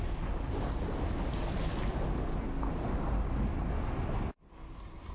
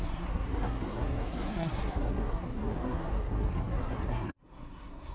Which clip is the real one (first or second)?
first